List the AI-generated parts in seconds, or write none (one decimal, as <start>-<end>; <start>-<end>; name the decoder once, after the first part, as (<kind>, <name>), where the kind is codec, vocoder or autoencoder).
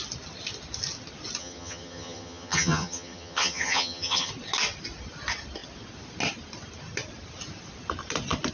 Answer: 1.4-4.3 (vocoder, HiFi-GAN)